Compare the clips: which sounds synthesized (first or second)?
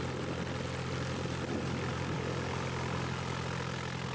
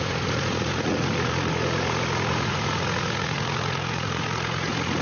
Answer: second